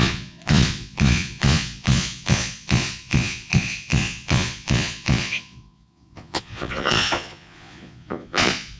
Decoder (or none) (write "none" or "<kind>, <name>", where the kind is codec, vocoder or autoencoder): vocoder, Vocos